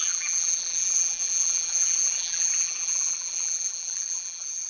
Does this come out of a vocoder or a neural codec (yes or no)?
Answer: yes